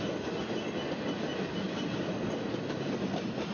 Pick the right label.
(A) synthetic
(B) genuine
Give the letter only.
B